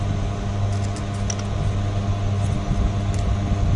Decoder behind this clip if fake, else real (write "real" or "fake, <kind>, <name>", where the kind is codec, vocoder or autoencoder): real